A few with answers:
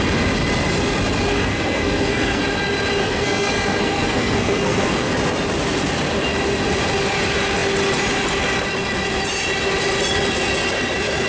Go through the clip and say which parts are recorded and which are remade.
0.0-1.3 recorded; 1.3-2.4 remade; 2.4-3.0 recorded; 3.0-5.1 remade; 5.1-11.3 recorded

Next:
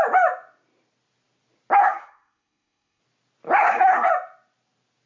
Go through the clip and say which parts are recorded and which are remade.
0.0-1.8 recorded; 1.8-3.0 remade; 3.0-3.6 recorded; 3.6-4.1 remade; 4.1-5.1 recorded

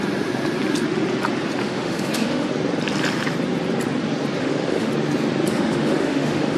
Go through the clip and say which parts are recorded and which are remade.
0.0-1.6 recorded; 1.6-2.5 remade; 2.5-4.4 recorded; 4.4-4.9 remade; 4.9-5.5 recorded; 5.5-6.6 remade

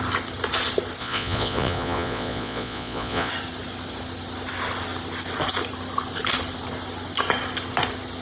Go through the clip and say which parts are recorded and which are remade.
0.0-1.0 recorded; 1.0-3.3 remade; 3.3-8.2 recorded

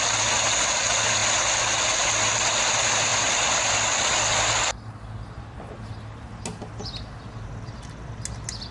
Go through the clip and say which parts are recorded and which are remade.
0.0-1.2 recorded; 1.2-2.1 remade; 2.1-8.7 recorded

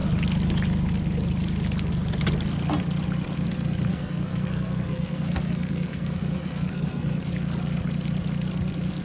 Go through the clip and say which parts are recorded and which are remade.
0.0-3.9 recorded; 3.9-7.3 remade; 7.3-9.0 recorded